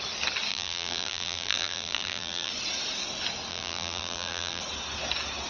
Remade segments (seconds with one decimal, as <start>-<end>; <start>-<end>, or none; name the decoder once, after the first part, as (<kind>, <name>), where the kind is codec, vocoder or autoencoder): 0.5-2.5 (vocoder, BigVGAN v2); 3.5-4.6

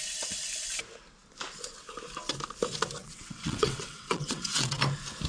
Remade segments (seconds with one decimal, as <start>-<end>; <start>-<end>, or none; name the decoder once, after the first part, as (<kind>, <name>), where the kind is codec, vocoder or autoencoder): 3.0-4.8 (vocoder, WaveNeXt)

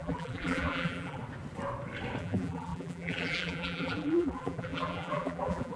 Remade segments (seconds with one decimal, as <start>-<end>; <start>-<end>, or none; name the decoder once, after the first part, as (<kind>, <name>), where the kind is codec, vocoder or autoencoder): 0.0-1.2 (vocoder, BigVGAN v2); 2.2-5.8

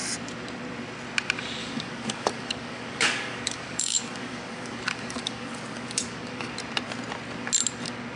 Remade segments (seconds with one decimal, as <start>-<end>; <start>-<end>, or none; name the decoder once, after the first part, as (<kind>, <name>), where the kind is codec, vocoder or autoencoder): 1.6-6.5 (codec, DAC)

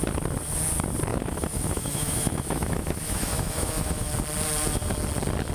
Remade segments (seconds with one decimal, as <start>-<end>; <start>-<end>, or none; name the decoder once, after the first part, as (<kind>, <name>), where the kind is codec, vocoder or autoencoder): 1.1-4.1 (autoencoder, DAC-VAE)

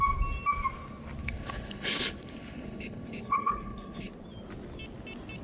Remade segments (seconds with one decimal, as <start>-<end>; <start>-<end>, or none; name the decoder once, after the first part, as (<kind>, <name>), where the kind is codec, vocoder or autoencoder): 1.2-4.1 (codec, HILCodec)

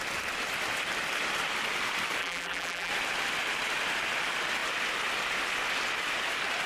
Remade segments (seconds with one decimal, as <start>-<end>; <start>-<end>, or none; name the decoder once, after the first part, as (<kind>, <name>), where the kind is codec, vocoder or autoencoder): 2.2-2.9 (vocoder, BigVGAN v2)